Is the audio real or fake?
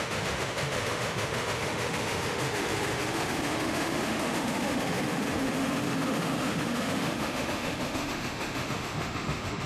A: fake